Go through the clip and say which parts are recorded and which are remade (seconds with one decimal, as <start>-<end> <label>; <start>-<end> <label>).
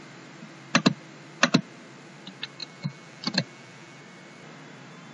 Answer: 0.0-2.6 recorded; 2.6-4.0 remade; 4.0-5.1 recorded